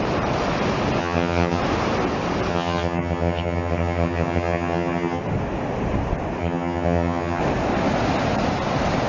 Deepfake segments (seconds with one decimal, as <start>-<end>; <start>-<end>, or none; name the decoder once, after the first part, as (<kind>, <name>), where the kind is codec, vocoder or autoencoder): 1.0-1.6 (vocoder, HiFi-GAN); 2.5-5.2; 6.4-7.4